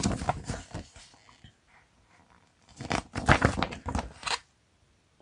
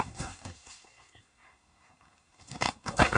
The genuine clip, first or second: first